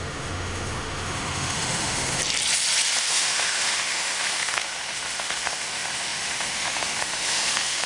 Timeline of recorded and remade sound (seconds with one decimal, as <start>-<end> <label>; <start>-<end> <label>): 0.0-2.2 remade; 2.2-3.0 recorded; 3.0-7.9 remade